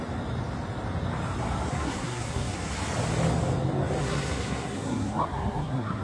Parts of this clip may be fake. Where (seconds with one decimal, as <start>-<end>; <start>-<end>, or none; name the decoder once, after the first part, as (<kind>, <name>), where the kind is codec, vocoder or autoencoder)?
1.7-2.7 (codec, SNAC); 4.0-6.0